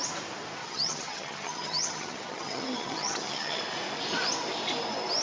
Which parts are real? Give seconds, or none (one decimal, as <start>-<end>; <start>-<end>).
0.0-0.6; 3.6-5.2